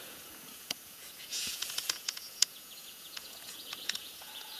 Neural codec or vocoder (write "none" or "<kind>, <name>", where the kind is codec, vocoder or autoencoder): vocoder, Vocos